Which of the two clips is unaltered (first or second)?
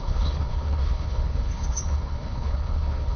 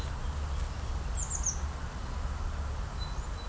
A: second